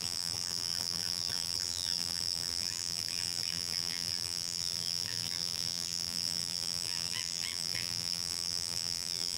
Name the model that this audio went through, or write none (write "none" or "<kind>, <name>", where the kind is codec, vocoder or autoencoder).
vocoder, BigVGAN v2